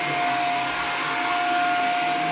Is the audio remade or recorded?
recorded